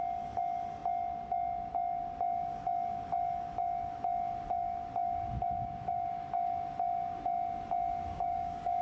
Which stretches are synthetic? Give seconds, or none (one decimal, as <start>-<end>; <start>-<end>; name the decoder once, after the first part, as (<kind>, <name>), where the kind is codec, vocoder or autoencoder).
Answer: 8.1-8.8 (codec, DAC)